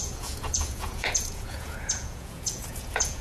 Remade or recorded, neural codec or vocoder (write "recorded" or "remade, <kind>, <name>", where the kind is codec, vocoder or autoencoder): remade, vocoder, Vocos